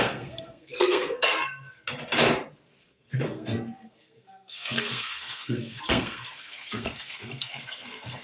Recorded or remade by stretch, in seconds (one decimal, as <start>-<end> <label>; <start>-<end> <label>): 0.0-1.8 remade; 1.8-2.8 recorded; 2.8-8.2 remade